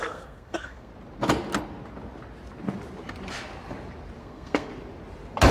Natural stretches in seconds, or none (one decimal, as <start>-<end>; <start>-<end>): 0.9-4.2; 4.7-5.5